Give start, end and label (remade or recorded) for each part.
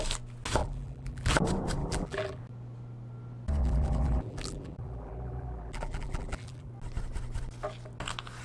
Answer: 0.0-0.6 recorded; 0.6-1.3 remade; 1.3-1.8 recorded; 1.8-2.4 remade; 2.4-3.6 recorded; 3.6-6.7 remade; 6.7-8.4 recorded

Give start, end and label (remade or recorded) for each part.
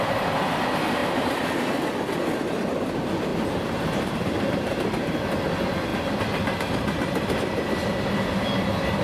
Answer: 0.0-1.0 recorded; 1.0-1.6 remade; 1.6-3.3 recorded; 3.3-5.2 remade; 5.2-9.0 recorded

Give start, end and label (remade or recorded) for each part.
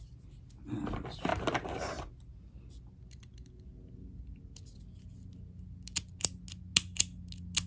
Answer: 0.0-1.3 recorded; 1.3-2.0 remade; 2.0-7.7 recorded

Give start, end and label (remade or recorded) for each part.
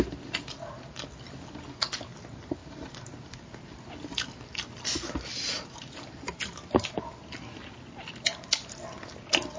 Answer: 0.0-2.6 recorded; 2.6-3.5 remade; 3.5-5.3 recorded; 5.3-5.9 remade; 5.9-9.6 recorded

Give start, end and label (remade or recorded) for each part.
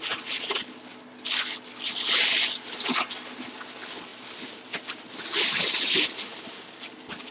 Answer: 0.0-4.1 recorded; 4.1-5.1 remade; 5.1-6.3 recorded; 6.3-7.3 remade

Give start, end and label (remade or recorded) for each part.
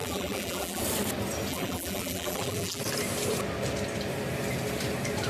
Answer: 0.0-0.8 remade; 0.8-1.5 recorded; 1.5-2.8 remade; 2.8-5.3 recorded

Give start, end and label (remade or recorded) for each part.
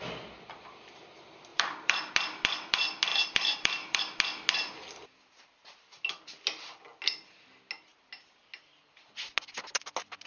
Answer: 0.0-1.5 recorded; 1.5-2.1 remade; 2.1-3.1 recorded; 3.1-4.0 remade; 4.0-10.3 recorded